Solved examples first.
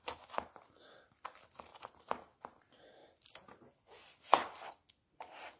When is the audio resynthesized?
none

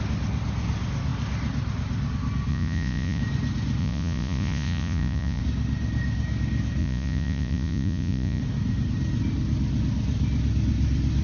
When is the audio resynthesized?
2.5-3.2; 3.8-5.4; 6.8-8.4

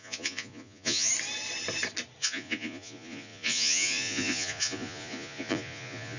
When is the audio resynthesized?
0.0-1.1; 2.2-6.2

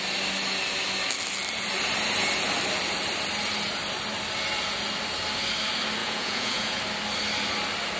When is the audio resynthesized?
6.0-6.8

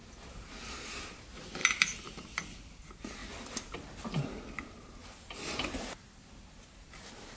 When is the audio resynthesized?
none

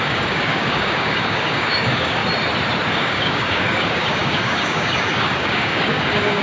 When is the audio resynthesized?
0.0-2.2; 2.9-6.4